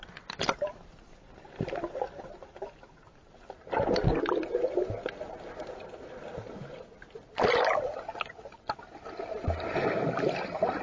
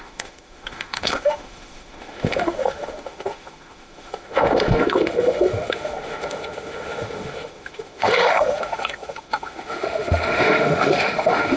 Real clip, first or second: first